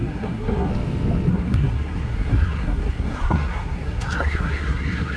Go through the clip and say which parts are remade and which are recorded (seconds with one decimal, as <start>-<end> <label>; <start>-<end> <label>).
0.0-0.7 remade; 0.7-1.3 recorded; 1.3-5.2 remade